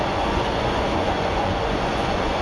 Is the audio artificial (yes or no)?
yes